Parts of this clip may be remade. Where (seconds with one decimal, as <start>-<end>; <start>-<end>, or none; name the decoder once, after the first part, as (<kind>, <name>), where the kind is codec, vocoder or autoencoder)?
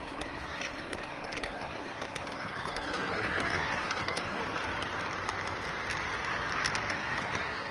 0.0-4.4 (codec, SNAC); 6.9-7.7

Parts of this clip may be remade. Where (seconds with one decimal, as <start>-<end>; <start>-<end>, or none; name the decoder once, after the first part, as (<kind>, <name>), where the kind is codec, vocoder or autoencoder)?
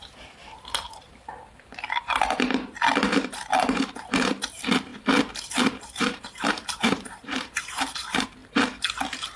0.0-1.1 (vocoder, BigVGAN v2); 3.1-8.4; 9.0-9.4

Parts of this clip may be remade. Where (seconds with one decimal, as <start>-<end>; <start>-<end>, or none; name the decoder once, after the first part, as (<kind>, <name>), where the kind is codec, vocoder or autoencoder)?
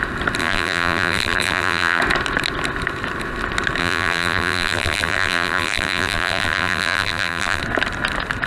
0.4-2.0 (vocoder, BigVGAN v2); 3.8-7.6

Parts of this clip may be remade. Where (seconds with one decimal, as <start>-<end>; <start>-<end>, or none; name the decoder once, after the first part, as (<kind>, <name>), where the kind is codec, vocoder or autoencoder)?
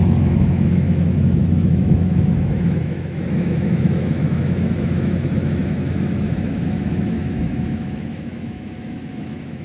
0.0-9.6 (autoencoder, DAC-VAE)